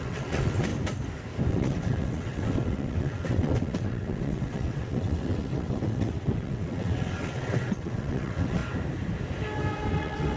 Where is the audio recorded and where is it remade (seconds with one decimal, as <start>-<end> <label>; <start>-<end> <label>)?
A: 0.0-0.7 remade; 0.7-1.5 recorded; 1.5-8.6 remade; 8.6-9.9 recorded; 9.9-10.4 remade